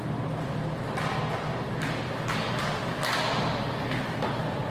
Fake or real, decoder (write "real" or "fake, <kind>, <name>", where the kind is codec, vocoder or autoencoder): real